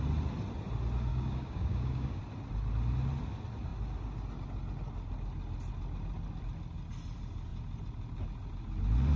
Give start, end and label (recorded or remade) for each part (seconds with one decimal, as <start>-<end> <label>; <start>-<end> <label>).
0.0-1.1 recorded; 1.1-2.2 remade; 2.2-9.2 recorded